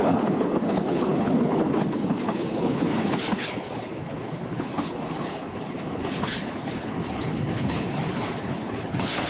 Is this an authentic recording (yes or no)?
no